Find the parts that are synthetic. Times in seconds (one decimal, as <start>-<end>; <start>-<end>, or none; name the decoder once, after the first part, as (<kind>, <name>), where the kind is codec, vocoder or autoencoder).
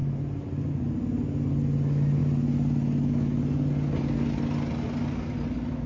none